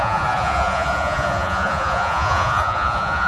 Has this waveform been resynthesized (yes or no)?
yes